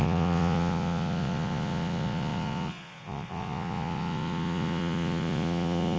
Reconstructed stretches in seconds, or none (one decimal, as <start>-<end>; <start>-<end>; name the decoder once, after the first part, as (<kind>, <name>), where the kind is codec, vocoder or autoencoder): 0.0-6.0 (vocoder, Vocos)